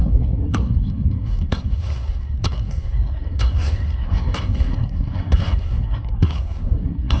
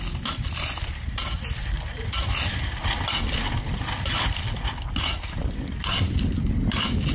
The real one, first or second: second